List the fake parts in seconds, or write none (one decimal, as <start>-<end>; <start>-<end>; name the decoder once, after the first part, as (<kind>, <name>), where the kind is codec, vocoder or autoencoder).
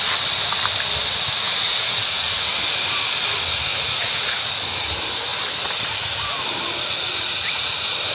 1.4-2.4 (vocoder, Vocos); 3.7-4.5